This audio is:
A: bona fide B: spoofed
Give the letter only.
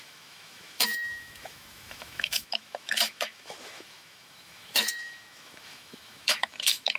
B